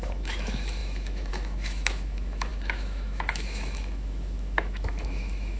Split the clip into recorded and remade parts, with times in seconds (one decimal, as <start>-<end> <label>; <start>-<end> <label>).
0.0-5.6 remade